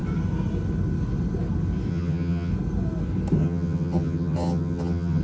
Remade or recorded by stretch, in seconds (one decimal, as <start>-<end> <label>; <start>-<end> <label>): 0.0-1.9 recorded; 1.9-2.5 remade; 2.5-3.4 recorded; 3.4-5.2 remade